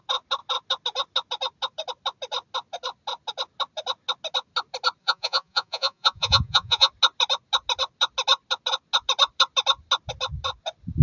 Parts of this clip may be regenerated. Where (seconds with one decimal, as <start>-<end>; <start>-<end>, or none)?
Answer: 5.0-6.9